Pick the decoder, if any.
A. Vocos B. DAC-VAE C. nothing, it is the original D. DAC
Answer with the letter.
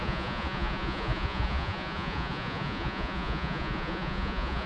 A